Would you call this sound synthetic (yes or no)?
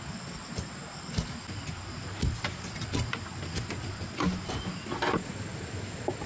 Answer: no